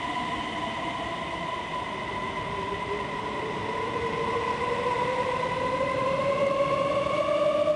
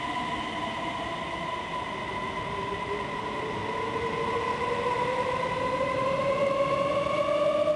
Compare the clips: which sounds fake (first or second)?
first